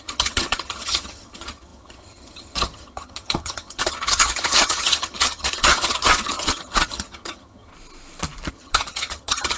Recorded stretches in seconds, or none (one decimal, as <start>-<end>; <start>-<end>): 7.7-8.5